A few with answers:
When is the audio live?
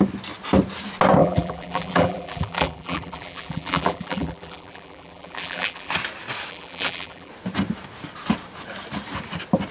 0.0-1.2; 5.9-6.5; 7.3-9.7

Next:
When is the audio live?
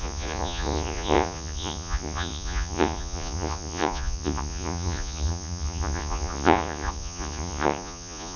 none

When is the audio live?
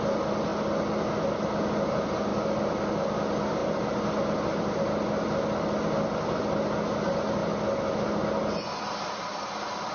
0.0-9.9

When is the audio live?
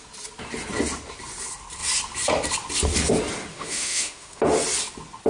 0.0-3.5; 4.4-5.3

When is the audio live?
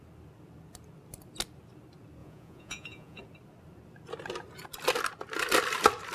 0.0-2.2; 3.2-6.1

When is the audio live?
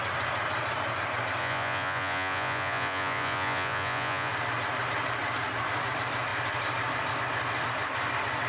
0.0-1.4; 4.3-8.5